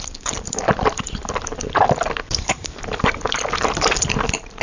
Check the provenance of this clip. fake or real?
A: fake